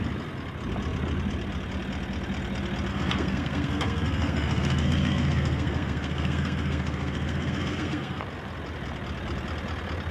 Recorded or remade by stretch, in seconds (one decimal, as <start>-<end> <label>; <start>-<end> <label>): 0.0-2.9 recorded; 2.9-8.2 remade; 8.2-10.1 recorded